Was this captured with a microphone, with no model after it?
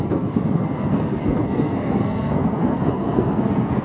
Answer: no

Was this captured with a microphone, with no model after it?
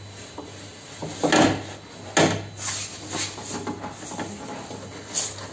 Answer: yes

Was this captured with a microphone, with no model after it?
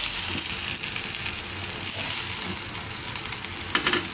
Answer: yes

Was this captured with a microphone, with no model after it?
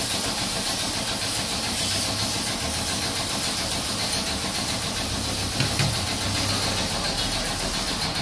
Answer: yes